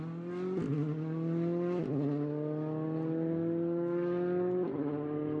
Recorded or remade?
recorded